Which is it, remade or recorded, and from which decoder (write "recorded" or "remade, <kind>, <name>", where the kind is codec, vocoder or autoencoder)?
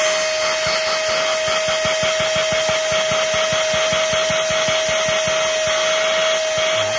recorded